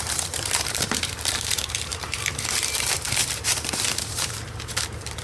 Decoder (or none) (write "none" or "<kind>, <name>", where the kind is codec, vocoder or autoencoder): vocoder, BigVGAN v2